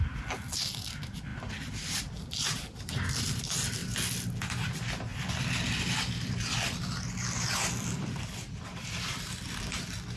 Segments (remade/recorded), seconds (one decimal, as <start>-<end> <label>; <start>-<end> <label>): 0.0-1.3 recorded; 1.3-3.4 remade; 3.4-5.1 recorded; 5.1-9.6 remade; 9.6-10.2 recorded